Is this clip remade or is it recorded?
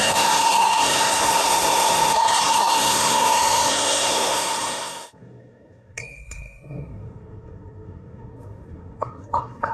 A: remade